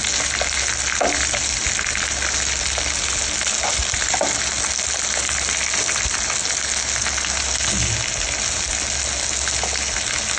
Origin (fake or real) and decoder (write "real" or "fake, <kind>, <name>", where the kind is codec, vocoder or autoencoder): real